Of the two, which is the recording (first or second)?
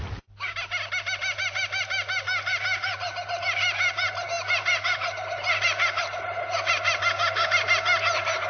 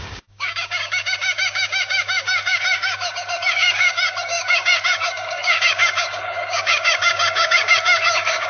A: first